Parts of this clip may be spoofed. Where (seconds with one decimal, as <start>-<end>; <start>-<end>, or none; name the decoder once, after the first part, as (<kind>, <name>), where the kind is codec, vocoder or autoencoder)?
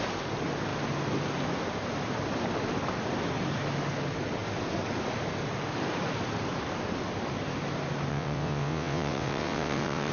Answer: 8.1-10.1 (vocoder, WaveNeXt)